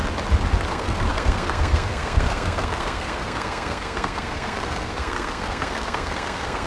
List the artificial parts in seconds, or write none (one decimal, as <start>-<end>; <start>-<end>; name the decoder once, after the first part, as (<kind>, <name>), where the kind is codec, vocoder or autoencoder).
0.7-6.7 (codec, SNAC)